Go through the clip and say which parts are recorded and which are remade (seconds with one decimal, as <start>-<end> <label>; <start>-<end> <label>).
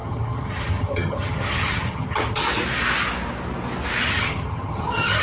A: 0.0-2.4 remade; 2.4-4.1 recorded; 4.1-5.2 remade